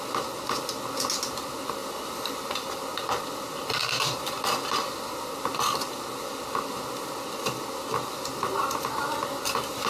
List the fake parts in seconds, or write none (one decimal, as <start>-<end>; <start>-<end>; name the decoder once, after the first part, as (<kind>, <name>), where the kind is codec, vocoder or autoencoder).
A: none